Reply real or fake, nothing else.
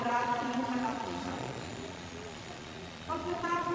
fake